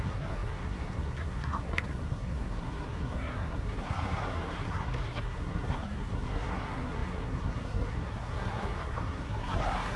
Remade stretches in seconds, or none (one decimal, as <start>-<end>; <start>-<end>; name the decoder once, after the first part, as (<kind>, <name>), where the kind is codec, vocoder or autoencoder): 0.0-10.0 (codec, SNAC)